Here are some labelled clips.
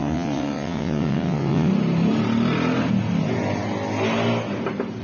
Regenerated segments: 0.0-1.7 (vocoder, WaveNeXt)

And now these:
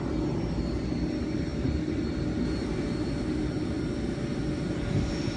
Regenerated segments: none

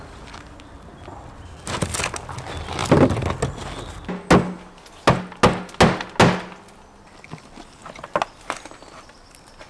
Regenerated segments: none

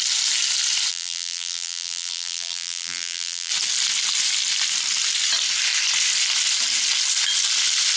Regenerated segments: 0.9-3.5 (vocoder, BigVGAN v2)